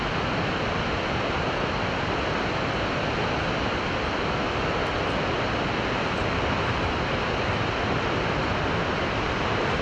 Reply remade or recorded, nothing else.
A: recorded